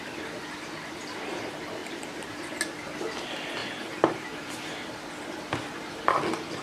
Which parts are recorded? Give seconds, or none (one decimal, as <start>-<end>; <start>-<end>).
0.0-1.8; 2.4-3.6; 6.0-6.6